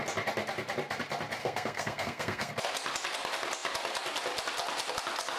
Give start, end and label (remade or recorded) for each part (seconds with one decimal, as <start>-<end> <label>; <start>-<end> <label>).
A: 0.0-1.4 recorded; 1.4-2.5 remade; 2.5-5.4 recorded